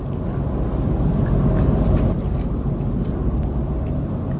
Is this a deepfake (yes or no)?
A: yes